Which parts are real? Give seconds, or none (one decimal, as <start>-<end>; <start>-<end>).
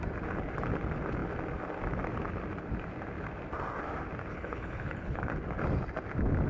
0.0-4.3; 5.2-6.5